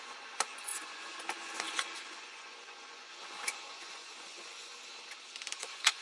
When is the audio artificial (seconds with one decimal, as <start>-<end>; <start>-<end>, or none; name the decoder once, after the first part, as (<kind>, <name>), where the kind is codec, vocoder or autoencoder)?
0.0-4.7 (vocoder, Vocos); 5.6-6.0